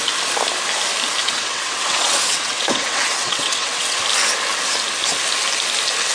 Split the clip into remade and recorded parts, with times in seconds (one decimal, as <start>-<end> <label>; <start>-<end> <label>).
0.0-1.2 recorded; 1.2-4.0 remade; 4.0-6.1 recorded